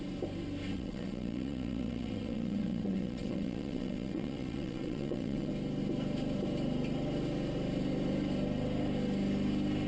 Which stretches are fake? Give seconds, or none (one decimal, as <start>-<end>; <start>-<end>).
0.7-5.5